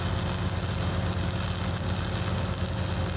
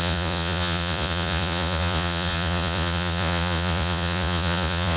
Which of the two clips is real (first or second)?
first